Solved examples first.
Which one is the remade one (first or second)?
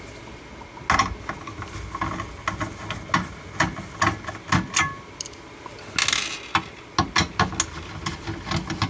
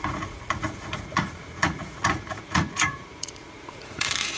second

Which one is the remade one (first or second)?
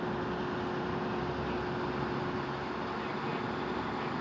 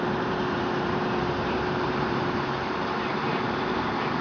second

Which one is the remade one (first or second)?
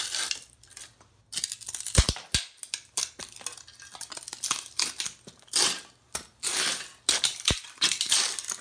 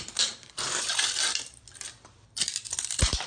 second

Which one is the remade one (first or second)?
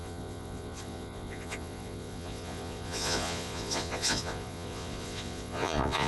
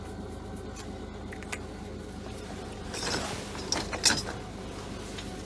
first